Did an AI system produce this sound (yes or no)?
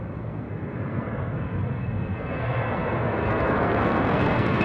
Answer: yes